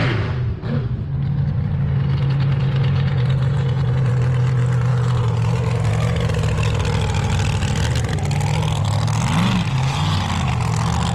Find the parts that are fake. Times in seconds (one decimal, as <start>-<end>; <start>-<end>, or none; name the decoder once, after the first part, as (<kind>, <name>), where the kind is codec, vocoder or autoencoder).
2.2-4.1 (vocoder, Vocos)